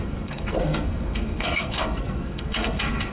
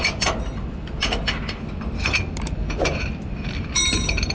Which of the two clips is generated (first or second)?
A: first